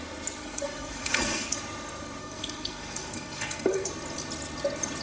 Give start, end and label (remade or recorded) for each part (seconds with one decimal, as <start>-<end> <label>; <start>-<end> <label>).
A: 0.0-0.4 recorded; 0.4-1.6 remade; 1.6-2.2 recorded; 2.2-3.9 remade; 3.9-5.0 recorded